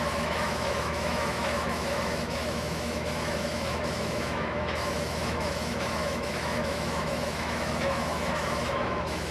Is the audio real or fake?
fake